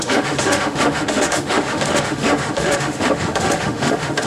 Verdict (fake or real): fake